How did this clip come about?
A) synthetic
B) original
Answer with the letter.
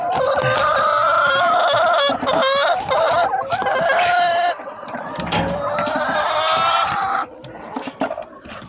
B